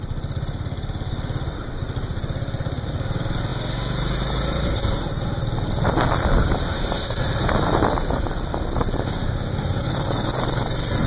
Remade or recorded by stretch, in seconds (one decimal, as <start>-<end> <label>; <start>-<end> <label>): 0.0-11.1 recorded